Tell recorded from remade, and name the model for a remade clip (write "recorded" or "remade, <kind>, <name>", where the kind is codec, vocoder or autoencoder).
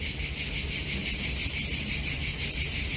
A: recorded